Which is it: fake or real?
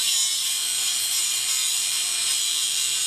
fake